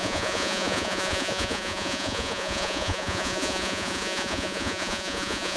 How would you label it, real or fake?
fake